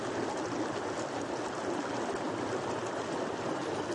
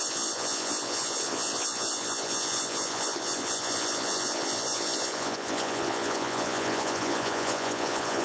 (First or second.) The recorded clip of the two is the first